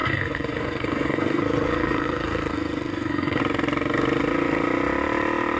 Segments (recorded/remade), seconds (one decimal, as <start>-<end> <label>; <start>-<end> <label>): 0.0-3.4 remade; 3.4-5.6 recorded